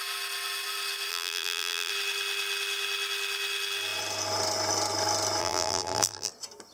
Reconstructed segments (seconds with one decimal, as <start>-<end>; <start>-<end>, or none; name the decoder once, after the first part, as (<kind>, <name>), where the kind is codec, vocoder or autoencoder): 1.1-1.9 (vocoder, BigVGAN v2); 5.4-6.3

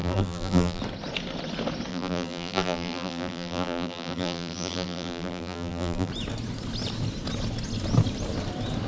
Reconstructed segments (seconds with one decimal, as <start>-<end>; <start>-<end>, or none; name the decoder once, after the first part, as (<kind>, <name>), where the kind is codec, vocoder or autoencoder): 0.0-0.8 (vocoder, BigVGAN v2); 1.9-6.1